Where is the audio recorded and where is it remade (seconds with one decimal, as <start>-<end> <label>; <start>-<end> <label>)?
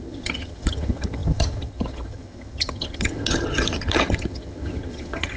0.0-5.4 remade